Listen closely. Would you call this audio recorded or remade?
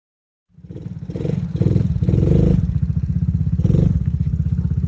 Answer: recorded